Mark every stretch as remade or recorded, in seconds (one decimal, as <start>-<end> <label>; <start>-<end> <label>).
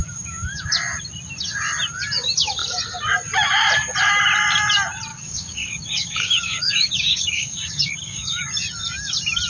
0.0-0.6 remade; 0.6-5.1 recorded; 5.1-8.4 remade; 8.4-9.5 recorded